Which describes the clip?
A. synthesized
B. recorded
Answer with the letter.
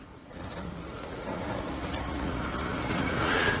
A